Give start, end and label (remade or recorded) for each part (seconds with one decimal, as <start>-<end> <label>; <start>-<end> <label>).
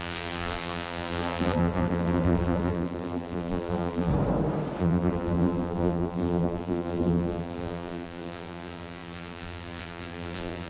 0.0-4.1 remade; 4.1-4.8 recorded; 4.8-10.7 remade